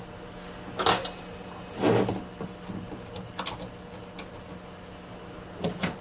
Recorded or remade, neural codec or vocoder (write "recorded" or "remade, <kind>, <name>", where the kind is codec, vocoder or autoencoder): recorded